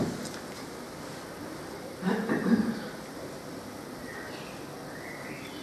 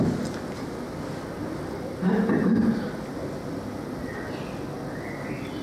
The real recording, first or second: second